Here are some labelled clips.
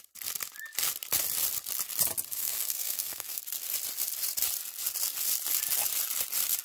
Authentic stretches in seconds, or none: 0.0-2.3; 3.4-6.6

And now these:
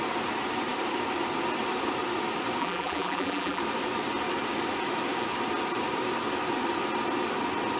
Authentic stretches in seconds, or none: 0.0-2.6; 3.6-7.8

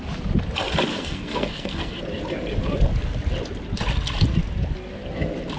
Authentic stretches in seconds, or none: 0.0-0.9; 2.0-5.6

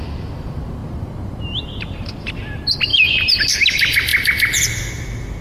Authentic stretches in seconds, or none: 0.0-0.8; 2.3-2.9; 3.4-5.4

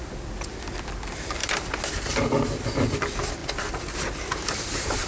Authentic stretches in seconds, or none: 0.0-5.1

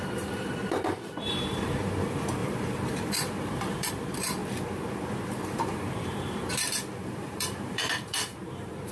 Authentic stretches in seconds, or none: 4.4-5.1